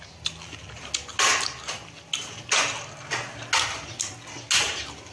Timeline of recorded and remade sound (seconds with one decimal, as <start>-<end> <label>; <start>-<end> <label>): 0.0-5.1 recorded